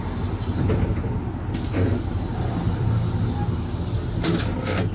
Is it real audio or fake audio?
real